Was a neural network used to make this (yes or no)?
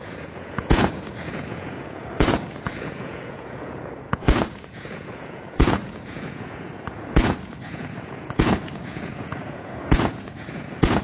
yes